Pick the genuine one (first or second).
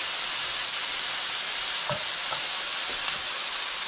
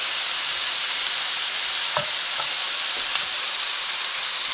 first